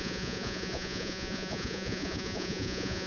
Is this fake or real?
fake